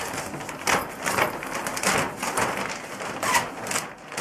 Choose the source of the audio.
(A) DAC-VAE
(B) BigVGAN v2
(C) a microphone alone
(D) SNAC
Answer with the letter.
C